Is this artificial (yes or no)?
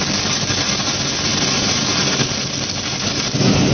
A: no